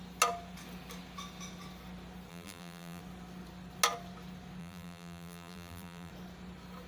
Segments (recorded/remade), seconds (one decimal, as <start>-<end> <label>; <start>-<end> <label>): 0.0-2.3 recorded; 2.3-3.0 remade; 3.0-4.6 recorded; 4.6-6.1 remade; 6.1-6.9 recorded